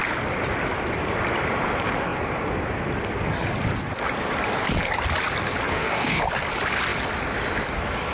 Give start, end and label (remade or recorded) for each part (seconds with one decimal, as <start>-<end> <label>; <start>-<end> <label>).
0.0-5.7 recorded; 5.7-6.2 remade; 6.2-8.1 recorded